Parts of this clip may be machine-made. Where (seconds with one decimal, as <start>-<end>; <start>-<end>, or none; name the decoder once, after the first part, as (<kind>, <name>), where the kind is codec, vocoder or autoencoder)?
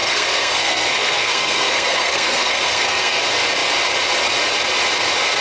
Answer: 0.0-3.2 (codec, SNAC)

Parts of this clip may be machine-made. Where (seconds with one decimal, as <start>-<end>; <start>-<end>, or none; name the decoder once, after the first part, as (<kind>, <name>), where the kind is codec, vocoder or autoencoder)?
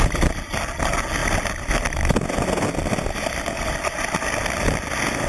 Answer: none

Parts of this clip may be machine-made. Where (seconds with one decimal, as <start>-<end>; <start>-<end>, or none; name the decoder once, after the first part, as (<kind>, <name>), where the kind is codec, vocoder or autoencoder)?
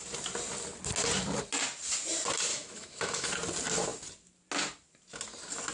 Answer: 2.5-3.3 (autoencoder, DAC-VAE)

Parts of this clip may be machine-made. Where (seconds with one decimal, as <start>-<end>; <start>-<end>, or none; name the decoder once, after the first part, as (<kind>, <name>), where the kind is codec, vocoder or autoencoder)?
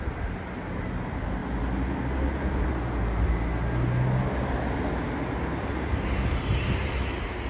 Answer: 0.0-1.4 (vocoder, BigVGAN v2); 5.9-7.5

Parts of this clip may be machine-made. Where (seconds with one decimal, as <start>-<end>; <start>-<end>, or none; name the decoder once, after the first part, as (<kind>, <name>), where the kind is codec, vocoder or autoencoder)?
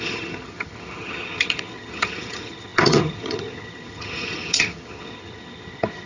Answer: 0.0-6.1 (vocoder, HiFi-GAN)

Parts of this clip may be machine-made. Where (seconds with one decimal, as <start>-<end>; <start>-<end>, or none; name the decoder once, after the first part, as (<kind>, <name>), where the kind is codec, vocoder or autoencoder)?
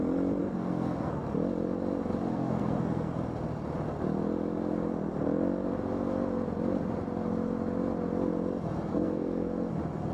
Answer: 0.4-1.2 (codec, SNAC); 2.3-3.1; 8.9-9.7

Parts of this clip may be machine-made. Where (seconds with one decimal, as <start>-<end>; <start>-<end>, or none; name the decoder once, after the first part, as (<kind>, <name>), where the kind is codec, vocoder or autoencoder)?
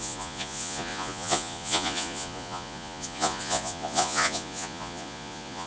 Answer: 0.0-5.7 (vocoder, Vocos)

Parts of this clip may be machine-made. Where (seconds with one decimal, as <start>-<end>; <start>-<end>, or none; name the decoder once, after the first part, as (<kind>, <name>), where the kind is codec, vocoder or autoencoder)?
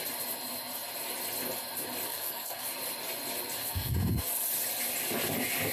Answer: 2.1-2.7 (codec, SNAC); 3.6-4.3